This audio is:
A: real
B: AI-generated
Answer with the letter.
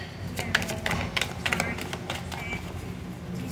A